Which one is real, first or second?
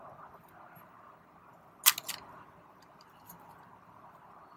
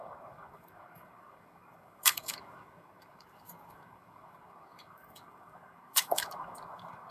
first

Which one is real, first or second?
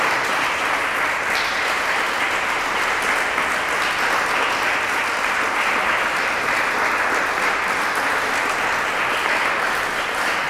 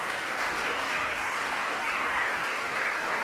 first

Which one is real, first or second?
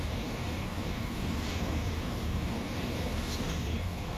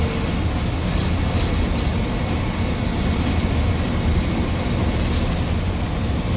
second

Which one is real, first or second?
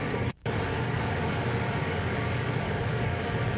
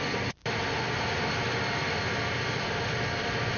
second